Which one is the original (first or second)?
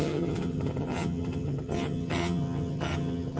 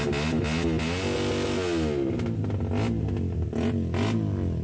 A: second